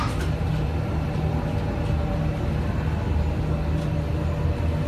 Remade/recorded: recorded